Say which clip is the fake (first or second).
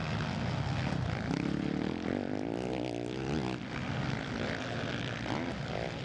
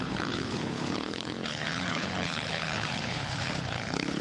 second